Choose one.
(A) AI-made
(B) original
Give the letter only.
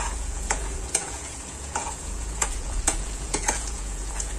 A